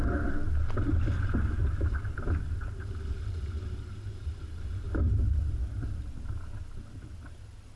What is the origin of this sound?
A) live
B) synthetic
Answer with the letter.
A